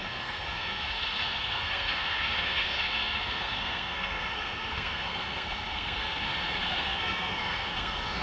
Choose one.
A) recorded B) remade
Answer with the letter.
B